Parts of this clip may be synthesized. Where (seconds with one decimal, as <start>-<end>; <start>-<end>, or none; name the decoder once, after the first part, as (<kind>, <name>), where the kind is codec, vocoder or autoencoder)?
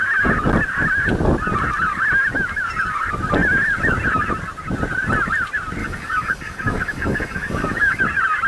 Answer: 5.8-8.0 (codec, DAC)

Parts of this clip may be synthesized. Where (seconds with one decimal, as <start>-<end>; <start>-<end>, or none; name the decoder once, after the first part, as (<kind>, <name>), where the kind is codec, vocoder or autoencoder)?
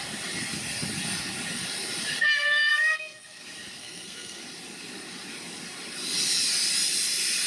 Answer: 2.7-3.4 (codec, SNAC); 3.8-4.4